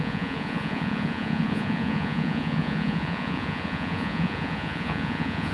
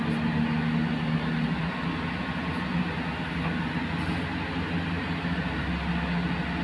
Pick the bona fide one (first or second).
second